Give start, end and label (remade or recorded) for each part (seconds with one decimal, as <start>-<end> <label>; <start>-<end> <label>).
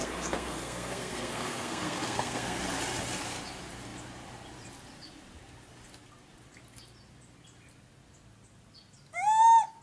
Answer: 0.0-2.6 remade; 2.6-9.8 recorded